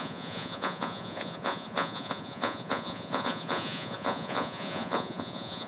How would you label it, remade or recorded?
remade